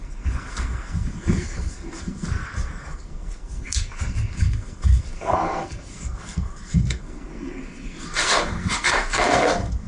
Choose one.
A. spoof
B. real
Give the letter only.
A